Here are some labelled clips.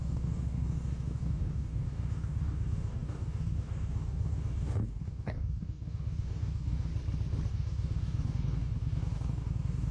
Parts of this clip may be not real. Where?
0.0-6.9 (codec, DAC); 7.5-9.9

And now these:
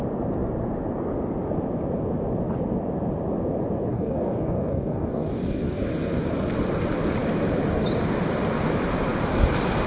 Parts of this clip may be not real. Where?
3.9-5.8 (codec, DAC)

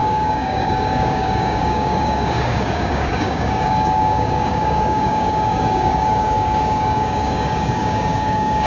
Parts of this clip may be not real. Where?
0.0-8.7 (codec, DAC)

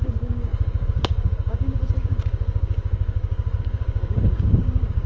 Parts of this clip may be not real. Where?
0.0-5.1 (codec, DAC)

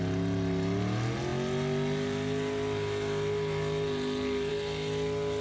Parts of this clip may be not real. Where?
none

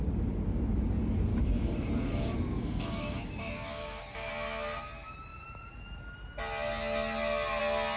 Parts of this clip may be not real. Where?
1.3-4.3 (codec, DAC)